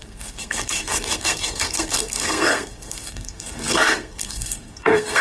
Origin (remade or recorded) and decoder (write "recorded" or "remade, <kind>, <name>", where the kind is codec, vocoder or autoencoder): remade, codec, SNAC